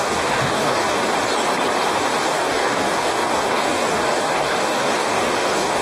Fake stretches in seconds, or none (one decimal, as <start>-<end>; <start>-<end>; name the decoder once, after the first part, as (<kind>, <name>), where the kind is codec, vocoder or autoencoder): 0.0-1.0 (codec, DAC); 2.0-5.8